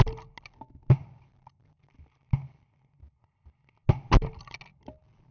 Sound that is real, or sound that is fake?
real